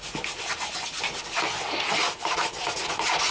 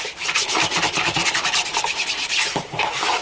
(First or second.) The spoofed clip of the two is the second